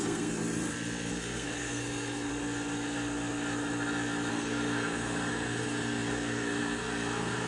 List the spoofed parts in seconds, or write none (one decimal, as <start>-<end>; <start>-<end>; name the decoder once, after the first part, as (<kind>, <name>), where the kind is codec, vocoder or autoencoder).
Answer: 0.0-0.4 (codec, SNAC); 1.1-2.3; 4.3-7.5